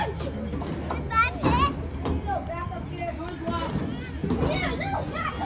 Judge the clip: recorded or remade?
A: recorded